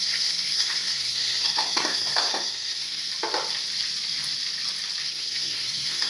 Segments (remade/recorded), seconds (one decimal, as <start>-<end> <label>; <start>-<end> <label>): 0.0-3.1 remade; 3.1-5.0 recorded; 5.0-6.1 remade

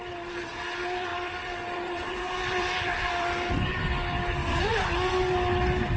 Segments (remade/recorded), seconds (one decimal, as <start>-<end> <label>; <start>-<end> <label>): 0.0-1.1 recorded; 1.1-3.5 remade; 3.5-6.0 recorded

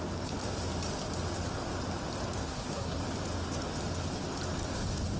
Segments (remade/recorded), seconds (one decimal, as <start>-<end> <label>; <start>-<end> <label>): 0.0-2.4 recorded; 2.4-3.0 remade; 3.0-5.2 recorded

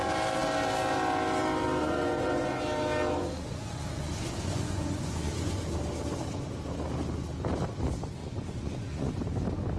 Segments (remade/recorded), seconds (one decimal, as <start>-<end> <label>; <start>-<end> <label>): 0.0-1.8 recorded; 1.8-2.6 remade; 2.6-3.2 recorded; 3.2-5.7 remade; 5.7-8.2 recorded; 8.2-9.1 remade; 9.1-9.8 recorded